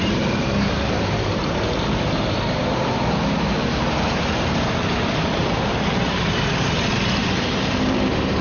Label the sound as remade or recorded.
remade